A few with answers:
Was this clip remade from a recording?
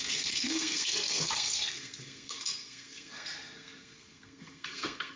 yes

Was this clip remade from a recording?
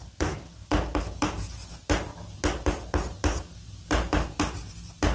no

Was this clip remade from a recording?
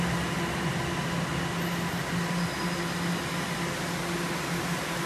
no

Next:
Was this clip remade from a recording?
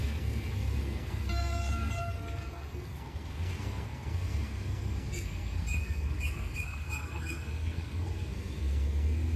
yes